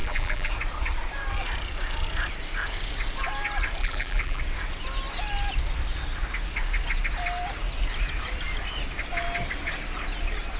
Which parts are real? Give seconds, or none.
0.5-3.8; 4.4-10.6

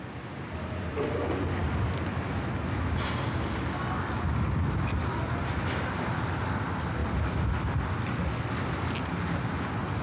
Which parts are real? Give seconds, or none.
0.0-10.0